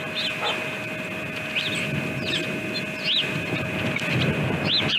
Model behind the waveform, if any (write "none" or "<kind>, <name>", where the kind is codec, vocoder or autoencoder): none